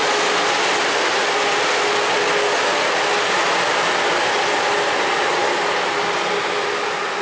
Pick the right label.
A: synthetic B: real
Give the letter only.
B